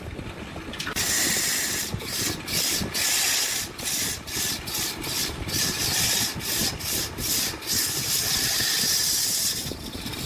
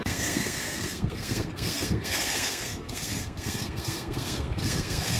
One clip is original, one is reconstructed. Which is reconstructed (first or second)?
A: second